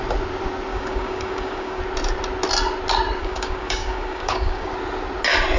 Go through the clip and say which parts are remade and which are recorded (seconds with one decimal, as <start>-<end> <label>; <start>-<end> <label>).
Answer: 0.0-0.7 recorded; 0.7-1.8 remade; 1.8-3.2 recorded; 3.2-4.7 remade; 4.7-5.6 recorded

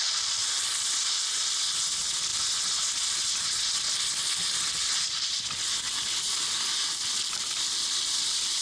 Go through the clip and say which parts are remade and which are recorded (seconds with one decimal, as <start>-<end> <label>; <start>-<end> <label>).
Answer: 0.0-8.6 recorded